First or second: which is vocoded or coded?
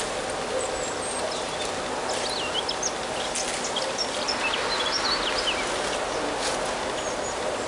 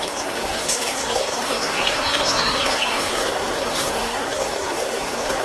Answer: second